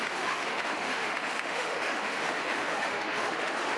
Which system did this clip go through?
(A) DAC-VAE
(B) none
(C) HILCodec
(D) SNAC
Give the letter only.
A